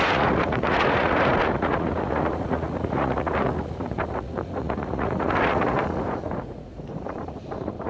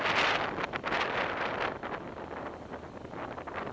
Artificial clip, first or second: first